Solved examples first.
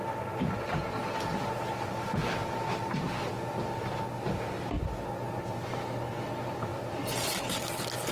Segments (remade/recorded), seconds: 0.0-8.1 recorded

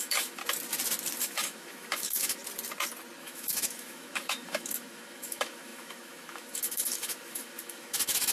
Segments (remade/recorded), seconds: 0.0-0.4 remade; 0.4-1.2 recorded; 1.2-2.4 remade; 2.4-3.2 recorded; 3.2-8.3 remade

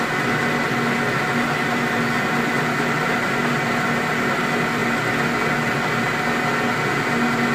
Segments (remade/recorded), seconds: 0.0-7.5 recorded